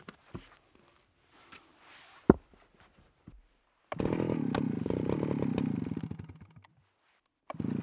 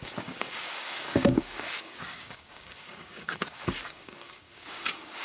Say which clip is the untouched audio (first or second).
first